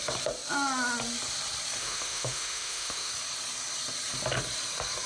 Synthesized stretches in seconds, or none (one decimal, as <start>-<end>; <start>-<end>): 1.8-3.1